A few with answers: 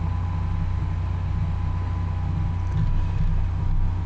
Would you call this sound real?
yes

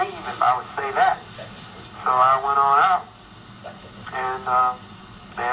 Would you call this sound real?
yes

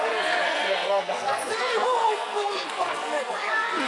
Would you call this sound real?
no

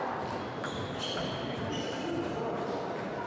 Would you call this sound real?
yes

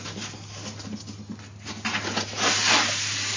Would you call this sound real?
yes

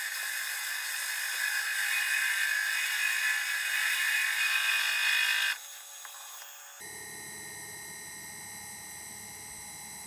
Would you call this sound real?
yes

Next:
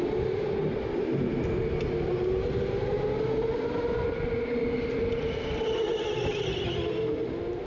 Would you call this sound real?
yes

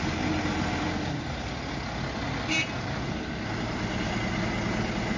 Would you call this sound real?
yes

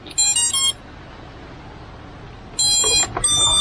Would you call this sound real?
yes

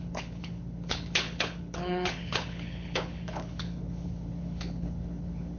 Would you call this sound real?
no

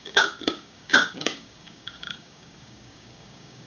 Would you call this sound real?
no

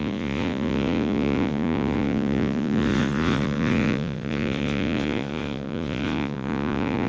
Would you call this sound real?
no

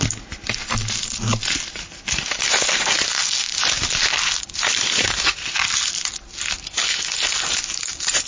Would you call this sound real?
yes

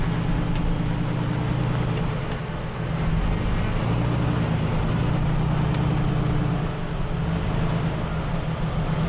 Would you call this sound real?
yes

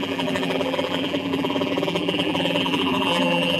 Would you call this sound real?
no